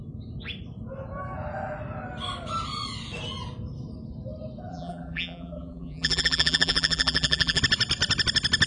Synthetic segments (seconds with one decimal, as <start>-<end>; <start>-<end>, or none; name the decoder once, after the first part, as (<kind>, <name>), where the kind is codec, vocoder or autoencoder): 4.7-7.6 (vocoder, BigVGAN v2)